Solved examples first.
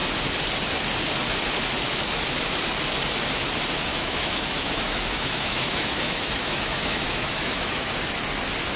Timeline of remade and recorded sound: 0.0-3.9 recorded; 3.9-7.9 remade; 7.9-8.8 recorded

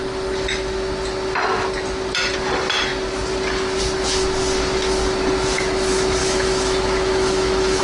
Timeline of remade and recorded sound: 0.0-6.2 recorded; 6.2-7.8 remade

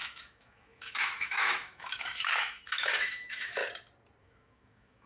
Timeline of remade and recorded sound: 0.0-3.6 remade; 3.6-4.2 recorded; 4.2-5.1 remade

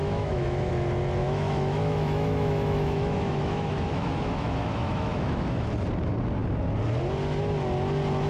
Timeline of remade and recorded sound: 0.0-0.7 remade; 0.7-1.2 recorded; 1.2-5.7 remade; 5.7-8.3 recorded

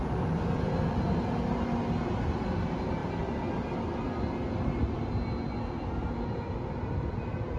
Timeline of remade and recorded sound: 0.0-7.6 recorded

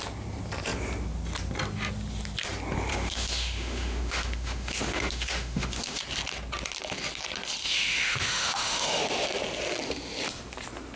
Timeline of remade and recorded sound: 0.0-2.9 recorded; 2.9-6.0 remade; 6.0-7.6 recorded; 7.6-9.0 remade; 9.0-11.0 recorded